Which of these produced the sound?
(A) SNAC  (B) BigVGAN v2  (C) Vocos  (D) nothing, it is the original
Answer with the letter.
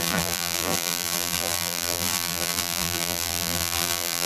B